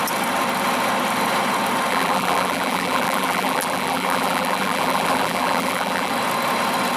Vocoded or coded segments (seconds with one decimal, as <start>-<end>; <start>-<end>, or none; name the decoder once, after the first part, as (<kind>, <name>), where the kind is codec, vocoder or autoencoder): 1.9-6.1 (vocoder, BigVGAN v2)